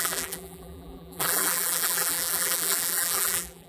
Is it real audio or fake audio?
fake